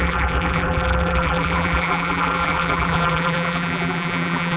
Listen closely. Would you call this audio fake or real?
fake